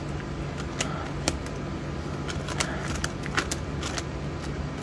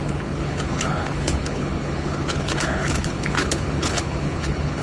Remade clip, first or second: second